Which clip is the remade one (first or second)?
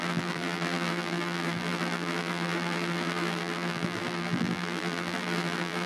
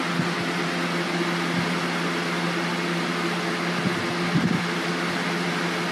first